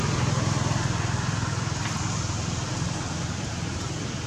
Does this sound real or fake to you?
real